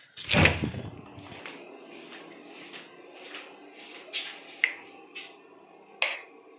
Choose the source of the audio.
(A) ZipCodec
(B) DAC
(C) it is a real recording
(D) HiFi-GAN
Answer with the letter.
C